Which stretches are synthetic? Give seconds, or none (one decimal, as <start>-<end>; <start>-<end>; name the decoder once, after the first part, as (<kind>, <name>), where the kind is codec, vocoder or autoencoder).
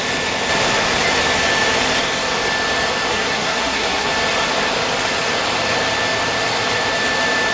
3.1-4.1 (codec, SNAC)